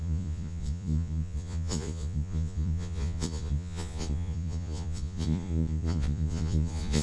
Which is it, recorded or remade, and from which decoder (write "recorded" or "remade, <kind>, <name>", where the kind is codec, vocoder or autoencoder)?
remade, vocoder, Vocos